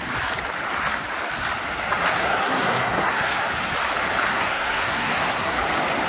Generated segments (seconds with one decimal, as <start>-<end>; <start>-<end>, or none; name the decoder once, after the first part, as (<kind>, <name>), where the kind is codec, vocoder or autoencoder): 2.2-3.4 (codec, SNAC); 4.3-5.6